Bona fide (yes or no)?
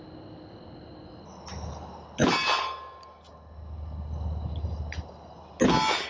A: yes